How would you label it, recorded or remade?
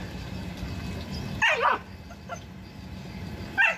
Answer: recorded